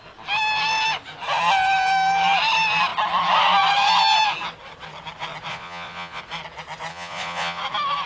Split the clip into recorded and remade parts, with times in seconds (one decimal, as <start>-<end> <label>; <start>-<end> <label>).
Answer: 0.0-5.5 recorded; 5.5-6.2 remade; 6.2-6.9 recorded; 6.9-7.6 remade; 7.6-8.1 recorded